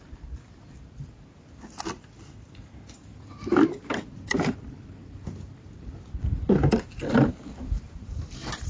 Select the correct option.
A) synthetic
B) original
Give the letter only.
B